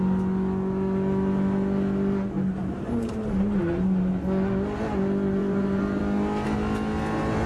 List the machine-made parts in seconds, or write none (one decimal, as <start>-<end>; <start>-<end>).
2.6-3.6; 5.4-6.0

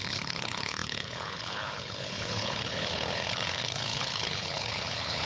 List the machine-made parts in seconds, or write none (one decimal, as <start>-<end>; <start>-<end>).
0.0-5.3